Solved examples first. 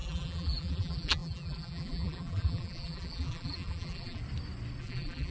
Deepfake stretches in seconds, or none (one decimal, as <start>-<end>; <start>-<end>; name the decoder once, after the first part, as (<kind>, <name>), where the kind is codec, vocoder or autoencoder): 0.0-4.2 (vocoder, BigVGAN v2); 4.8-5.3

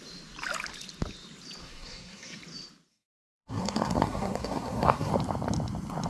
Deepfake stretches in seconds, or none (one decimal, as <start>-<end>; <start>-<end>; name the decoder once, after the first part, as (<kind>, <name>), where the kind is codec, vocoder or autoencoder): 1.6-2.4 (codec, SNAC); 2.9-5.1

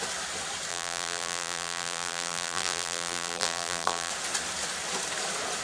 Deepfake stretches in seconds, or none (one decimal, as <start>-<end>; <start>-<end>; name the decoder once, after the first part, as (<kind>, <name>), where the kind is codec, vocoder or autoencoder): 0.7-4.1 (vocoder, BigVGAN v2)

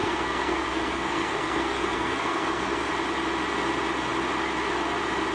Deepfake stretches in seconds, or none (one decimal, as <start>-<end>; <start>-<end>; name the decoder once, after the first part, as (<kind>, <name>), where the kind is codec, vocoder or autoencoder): 0.0-2.9 (codec, SNAC)

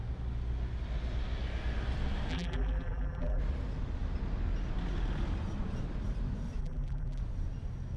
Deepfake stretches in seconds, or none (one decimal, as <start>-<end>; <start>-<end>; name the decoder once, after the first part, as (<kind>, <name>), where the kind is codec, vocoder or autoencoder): 2.3-3.4 (vocoder, BigVGAN v2); 6.6-7.2

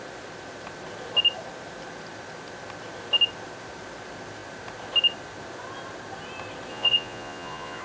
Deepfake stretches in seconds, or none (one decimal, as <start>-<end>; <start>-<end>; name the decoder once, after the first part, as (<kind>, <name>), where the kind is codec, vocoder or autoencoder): 6.7-7.8 (vocoder, Vocos)

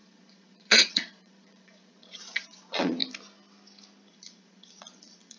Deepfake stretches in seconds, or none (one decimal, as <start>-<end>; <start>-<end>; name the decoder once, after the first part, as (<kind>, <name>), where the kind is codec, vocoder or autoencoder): 0.0-3.0 (vocoder, Vocos); 4.1-5.4